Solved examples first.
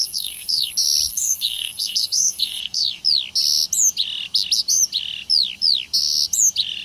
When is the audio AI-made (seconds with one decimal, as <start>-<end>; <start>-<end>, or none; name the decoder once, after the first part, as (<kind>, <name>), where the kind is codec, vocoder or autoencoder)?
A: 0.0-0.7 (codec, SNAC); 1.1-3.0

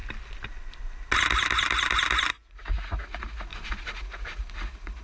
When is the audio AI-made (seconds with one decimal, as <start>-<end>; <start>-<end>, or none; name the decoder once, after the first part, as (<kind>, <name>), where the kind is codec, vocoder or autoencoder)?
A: 2.3-5.0 (vocoder, Vocos)

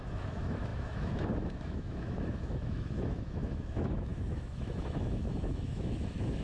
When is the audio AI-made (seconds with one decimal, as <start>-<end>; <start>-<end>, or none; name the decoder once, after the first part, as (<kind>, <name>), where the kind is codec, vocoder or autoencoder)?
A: 0.0-6.4 (autoencoder, DAC-VAE)